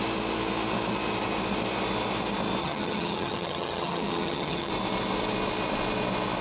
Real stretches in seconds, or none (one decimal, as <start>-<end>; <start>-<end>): 0.0-2.6; 4.7-6.4